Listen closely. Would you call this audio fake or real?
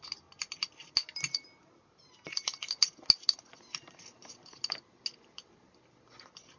real